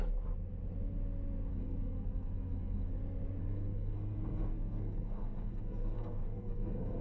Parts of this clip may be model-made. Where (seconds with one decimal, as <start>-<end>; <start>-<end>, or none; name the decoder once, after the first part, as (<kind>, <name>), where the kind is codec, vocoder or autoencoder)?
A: 1.5-3.0 (codec, SNAC); 3.4-7.0